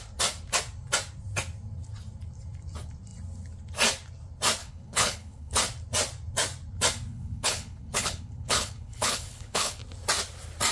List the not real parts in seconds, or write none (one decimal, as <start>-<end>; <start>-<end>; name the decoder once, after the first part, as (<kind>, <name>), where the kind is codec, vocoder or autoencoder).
4.6-5.6 (codec, HILCodec); 7.1-9.8